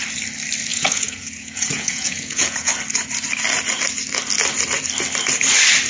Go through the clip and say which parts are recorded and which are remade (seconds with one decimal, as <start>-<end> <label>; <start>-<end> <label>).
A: 0.0-0.7 recorded; 0.7-2.7 remade; 2.7-5.9 recorded